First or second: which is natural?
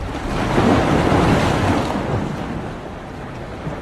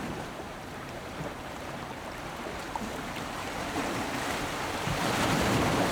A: first